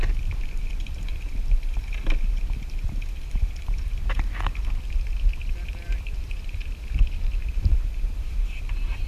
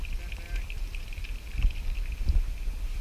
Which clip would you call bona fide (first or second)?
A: second